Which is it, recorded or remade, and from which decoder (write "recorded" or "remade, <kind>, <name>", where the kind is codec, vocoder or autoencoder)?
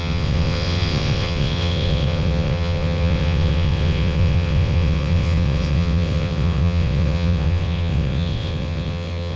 remade, vocoder, WaveNeXt